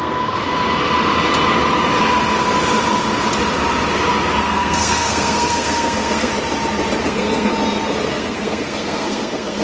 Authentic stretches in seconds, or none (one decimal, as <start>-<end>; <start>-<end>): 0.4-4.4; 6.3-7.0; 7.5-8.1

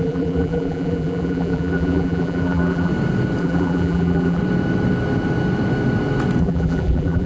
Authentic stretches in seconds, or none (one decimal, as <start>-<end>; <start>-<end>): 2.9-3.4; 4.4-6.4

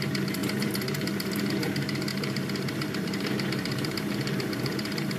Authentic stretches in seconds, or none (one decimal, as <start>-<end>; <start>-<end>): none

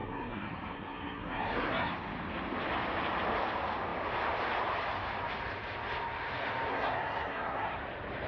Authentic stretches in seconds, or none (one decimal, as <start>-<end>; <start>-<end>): 1.9-6.7; 7.8-8.3

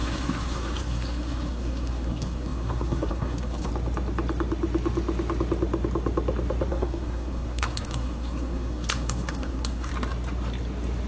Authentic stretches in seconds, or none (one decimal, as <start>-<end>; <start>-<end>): 3.7-6.7; 9.9-11.1

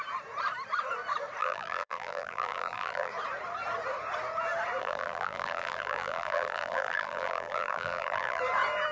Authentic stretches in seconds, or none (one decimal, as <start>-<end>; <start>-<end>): 0.0-1.4; 3.1-4.8; 8.4-8.9

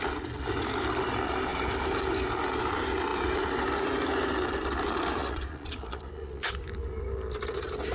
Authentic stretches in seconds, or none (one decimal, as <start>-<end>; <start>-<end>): 0.0-5.2; 6.5-7.9